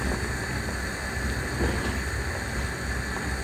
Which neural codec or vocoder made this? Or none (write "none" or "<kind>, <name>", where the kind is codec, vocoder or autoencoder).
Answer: none